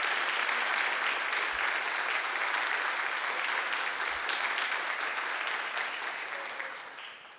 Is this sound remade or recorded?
recorded